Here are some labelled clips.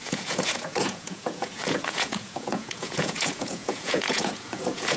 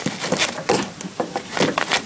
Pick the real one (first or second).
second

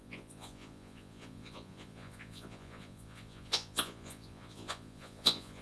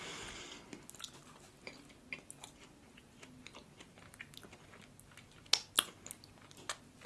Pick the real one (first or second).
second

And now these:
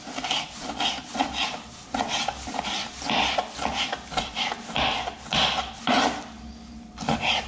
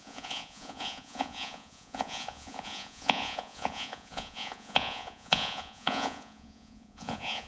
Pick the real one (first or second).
first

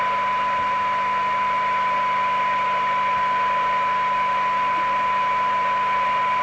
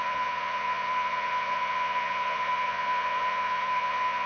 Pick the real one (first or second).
first